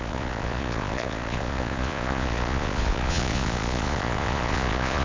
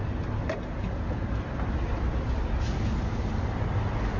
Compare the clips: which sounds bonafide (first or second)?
second